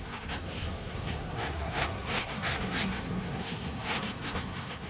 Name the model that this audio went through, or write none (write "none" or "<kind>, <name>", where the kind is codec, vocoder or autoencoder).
codec, SNAC